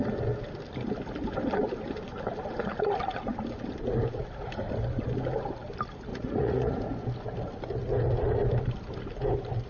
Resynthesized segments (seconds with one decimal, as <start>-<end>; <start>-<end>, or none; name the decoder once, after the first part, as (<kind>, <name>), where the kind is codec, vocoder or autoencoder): 6.1-6.8 (vocoder, Vocos)